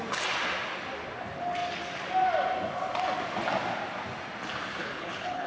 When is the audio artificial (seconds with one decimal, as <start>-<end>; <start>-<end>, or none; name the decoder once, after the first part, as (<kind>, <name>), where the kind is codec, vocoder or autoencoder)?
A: 4.8-5.5 (codec, HILCodec)